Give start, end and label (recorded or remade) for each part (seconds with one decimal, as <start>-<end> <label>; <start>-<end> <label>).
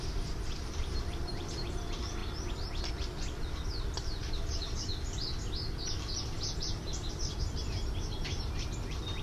0.0-2.2 remade; 2.2-3.4 recorded; 3.4-4.9 remade; 4.9-6.2 recorded; 6.2-9.2 remade